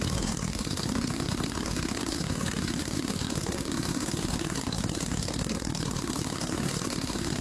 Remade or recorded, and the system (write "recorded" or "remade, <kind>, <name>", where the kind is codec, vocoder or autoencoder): remade, codec, SNAC